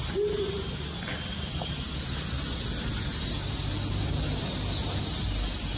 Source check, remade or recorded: recorded